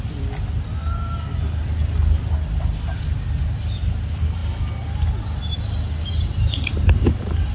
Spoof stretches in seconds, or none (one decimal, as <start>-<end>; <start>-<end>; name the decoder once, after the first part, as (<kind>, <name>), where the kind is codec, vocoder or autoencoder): none